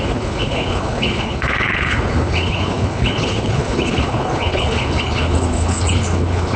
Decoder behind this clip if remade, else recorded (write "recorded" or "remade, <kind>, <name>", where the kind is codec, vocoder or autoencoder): remade, codec, HILCodec